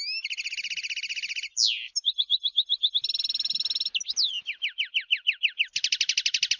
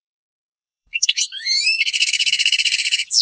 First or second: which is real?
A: first